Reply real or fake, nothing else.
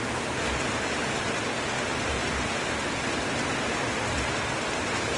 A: real